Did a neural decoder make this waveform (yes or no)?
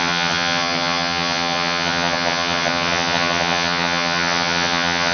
yes